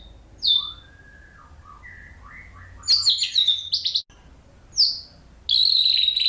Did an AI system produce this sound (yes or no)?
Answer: no